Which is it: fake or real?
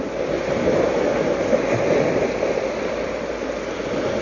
real